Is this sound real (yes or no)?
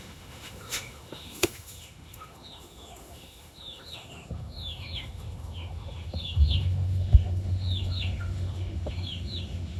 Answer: no